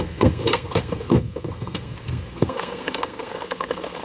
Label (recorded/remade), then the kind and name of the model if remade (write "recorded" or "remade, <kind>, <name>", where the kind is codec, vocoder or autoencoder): remade, codec, SNAC